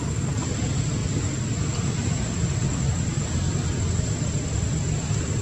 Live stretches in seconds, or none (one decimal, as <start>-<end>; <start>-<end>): 0.0-5.4